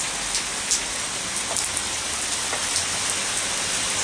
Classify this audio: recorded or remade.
recorded